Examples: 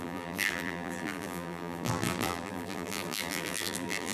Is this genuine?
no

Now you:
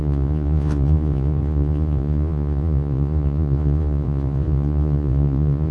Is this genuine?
no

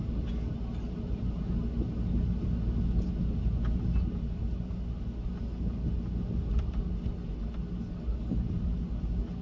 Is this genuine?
yes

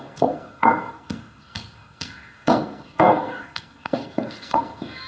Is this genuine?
no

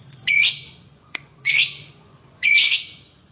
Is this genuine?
no